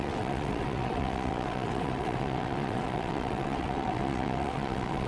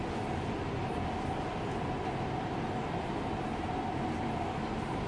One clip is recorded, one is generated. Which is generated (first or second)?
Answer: first